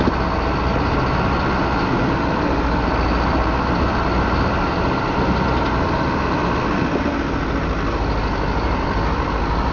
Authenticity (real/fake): real